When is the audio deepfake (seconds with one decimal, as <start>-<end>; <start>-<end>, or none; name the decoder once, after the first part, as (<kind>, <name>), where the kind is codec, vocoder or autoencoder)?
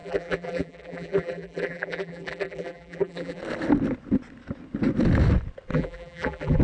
0.0-3.4 (vocoder, BigVGAN v2); 5.7-6.6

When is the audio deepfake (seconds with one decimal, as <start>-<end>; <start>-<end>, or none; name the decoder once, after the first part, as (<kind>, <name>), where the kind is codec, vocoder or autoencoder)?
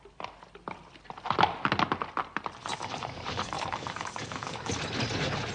2.7-4.7 (codec, DAC)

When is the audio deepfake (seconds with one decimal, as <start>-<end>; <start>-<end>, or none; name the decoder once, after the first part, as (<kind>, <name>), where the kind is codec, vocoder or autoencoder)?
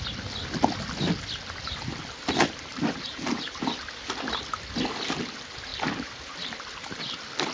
2.7-3.8 (vocoder, BigVGAN v2); 5.7-7.0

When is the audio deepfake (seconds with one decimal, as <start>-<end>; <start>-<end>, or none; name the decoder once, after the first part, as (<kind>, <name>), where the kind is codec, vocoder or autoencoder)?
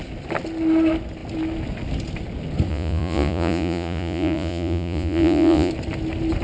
2.7-5.7 (vocoder, Vocos)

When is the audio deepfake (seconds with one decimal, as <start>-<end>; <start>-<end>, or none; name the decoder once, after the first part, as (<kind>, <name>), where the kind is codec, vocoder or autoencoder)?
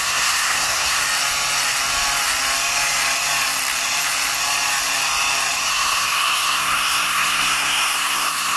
0.0-1.0 (codec, SNAC); 5.7-8.6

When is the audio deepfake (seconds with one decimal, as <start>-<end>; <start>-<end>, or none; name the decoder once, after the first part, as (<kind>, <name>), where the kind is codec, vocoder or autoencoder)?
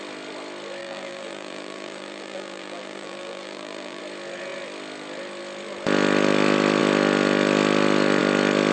0.8-4.0 (vocoder, BigVGAN v2)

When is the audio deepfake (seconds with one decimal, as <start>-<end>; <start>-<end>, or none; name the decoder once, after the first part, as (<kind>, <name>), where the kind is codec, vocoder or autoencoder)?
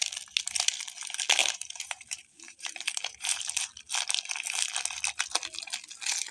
1.4-3.4 (vocoder, BigVGAN v2)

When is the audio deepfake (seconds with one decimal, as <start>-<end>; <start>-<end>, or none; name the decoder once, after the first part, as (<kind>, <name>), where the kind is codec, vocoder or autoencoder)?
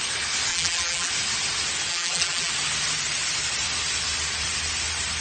0.5-1.1 (vocoder, BigVGAN v2); 1.9-2.5